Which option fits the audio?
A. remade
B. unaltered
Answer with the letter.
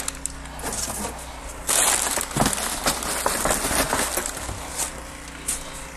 B